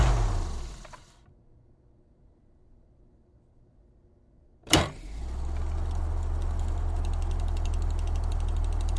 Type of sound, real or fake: real